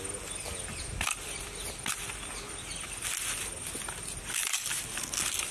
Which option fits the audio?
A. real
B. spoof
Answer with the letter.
A